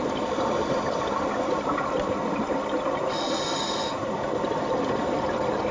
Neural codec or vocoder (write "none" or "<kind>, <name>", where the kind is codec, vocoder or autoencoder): none